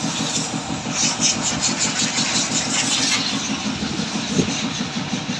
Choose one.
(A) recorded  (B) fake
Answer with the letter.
A